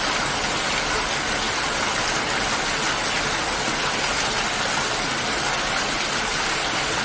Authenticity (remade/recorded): recorded